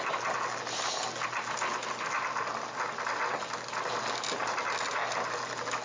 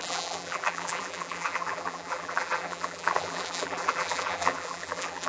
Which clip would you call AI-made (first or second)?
second